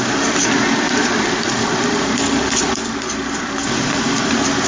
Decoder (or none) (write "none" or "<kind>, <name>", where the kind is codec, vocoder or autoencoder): none